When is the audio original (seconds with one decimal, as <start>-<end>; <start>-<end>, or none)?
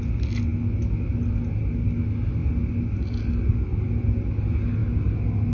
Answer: 0.0-5.5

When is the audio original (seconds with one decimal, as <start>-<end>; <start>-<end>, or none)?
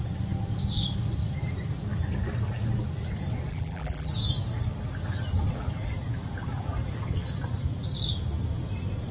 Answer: 0.0-3.5; 4.1-9.1